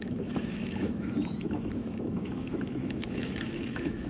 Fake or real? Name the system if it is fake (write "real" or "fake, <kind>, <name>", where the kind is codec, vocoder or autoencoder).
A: fake, autoencoder, DAC-VAE